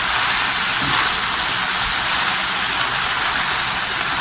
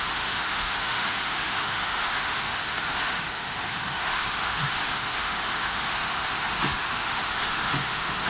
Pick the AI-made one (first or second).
second